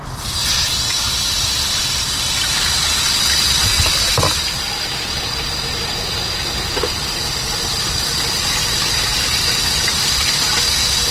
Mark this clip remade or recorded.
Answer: recorded